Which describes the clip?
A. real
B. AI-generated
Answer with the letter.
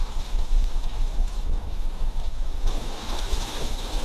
B